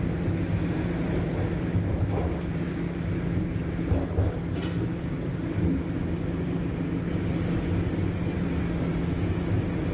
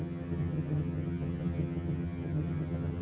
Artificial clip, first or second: second